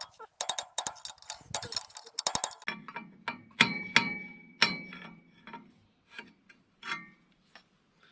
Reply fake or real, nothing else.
real